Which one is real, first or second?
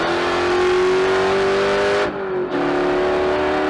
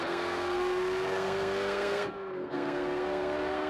first